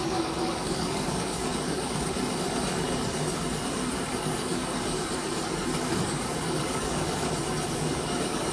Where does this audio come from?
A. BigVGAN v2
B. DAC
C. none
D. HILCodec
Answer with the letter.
B